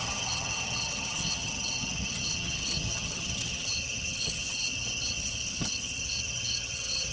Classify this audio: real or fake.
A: fake